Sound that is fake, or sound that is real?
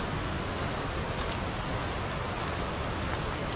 real